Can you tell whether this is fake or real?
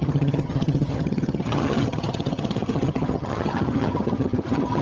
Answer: fake